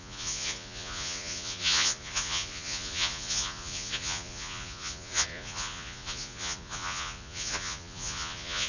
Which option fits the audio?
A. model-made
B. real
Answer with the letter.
A